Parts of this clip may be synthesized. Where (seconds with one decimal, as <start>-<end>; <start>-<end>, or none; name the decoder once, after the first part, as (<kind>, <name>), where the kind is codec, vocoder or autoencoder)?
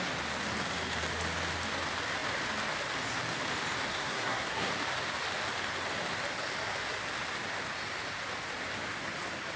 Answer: 3.9-4.7 (codec, SNAC)